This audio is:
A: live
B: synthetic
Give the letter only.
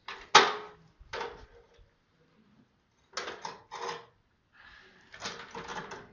A